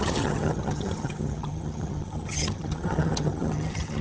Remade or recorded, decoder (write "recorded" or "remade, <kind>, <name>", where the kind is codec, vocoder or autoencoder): remade, vocoder, HiFi-GAN